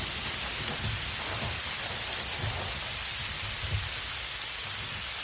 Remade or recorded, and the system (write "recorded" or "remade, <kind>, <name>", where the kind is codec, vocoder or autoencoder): recorded